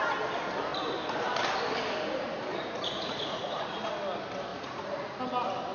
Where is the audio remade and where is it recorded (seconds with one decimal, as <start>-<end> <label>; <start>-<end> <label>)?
0.0-2.5 recorded; 2.5-3.9 remade; 3.9-4.5 recorded; 4.5-5.2 remade; 5.2-5.7 recorded